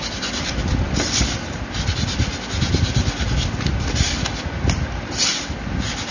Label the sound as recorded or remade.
recorded